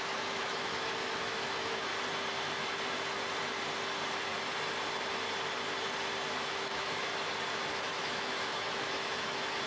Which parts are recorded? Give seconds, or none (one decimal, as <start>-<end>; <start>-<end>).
1.9-6.5; 7.1-7.7